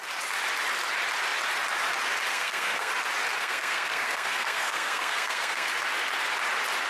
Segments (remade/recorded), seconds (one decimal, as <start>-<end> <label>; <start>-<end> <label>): 0.0-2.3 recorded; 2.3-2.9 remade; 2.9-3.4 recorded; 3.4-5.7 remade; 5.7-6.9 recorded

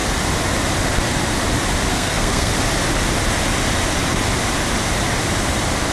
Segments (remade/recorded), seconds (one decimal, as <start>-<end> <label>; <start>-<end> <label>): 0.0-1.9 recorded; 1.9-2.5 remade; 2.5-5.9 recorded

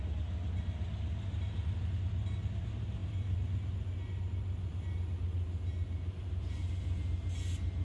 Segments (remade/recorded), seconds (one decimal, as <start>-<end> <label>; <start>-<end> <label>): 0.0-7.8 recorded

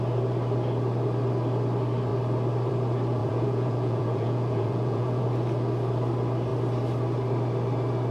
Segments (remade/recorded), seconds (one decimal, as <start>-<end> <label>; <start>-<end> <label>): 0.0-3.2 recorded; 3.2-5.2 remade; 5.2-8.1 recorded

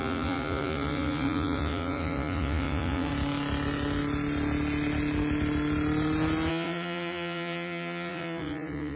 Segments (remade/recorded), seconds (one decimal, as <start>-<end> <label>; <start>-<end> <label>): 0.0-3.1 remade; 3.1-6.5 recorded; 6.5-9.0 remade

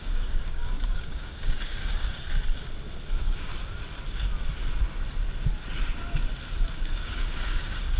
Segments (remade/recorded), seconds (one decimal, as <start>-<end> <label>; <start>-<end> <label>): 0.0-2.4 remade; 2.4-3.1 recorded; 3.1-3.5 remade; 3.5-6.7 recorded; 6.7-8.0 remade

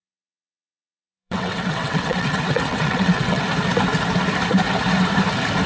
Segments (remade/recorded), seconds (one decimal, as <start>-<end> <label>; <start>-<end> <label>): 0.0-3.4 remade; 3.4-5.7 recorded

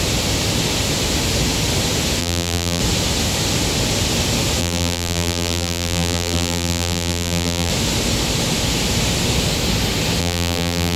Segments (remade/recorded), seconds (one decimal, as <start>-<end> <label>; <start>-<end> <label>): 0.0-2.2 recorded; 2.2-2.8 remade; 2.8-4.6 recorded; 4.6-7.7 remade; 7.7-10.2 recorded; 10.2-11.0 remade